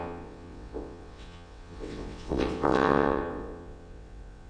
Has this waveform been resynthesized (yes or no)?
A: yes